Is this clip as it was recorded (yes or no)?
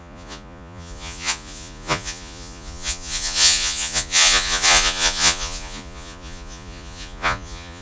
no